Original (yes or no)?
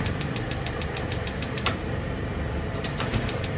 no